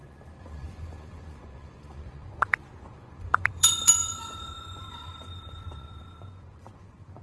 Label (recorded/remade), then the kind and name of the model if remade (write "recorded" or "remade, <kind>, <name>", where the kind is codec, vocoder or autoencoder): remade, vocoder, Vocos